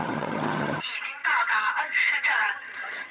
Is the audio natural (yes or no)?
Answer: no